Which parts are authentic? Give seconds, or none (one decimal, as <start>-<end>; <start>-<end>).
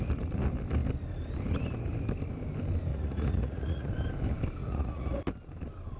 0.0-2.9; 3.9-4.6; 5.2-6.0